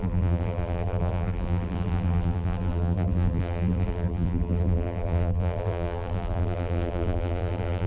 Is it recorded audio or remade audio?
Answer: remade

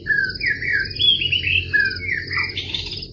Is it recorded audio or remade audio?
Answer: recorded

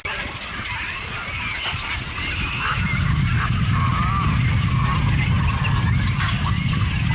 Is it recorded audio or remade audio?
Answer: recorded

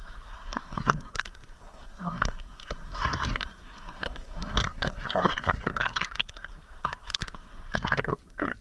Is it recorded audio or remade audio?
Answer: remade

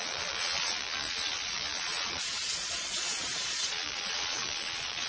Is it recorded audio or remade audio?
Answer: remade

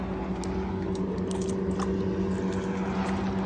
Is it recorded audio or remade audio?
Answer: recorded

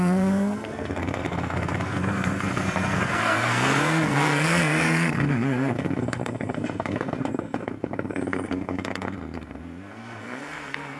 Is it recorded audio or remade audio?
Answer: remade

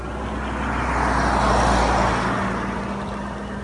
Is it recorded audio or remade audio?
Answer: recorded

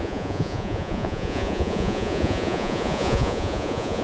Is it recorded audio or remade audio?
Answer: remade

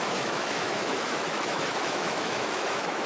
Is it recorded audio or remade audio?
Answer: remade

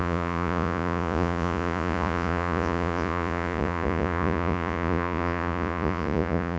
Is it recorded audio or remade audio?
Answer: remade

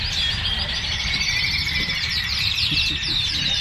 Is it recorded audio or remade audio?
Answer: remade